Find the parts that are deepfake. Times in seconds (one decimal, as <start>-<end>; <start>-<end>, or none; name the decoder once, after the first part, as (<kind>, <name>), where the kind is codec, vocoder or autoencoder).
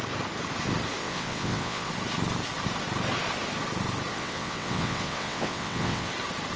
1.0-1.9 (vocoder, WaveNeXt); 4.1-6.1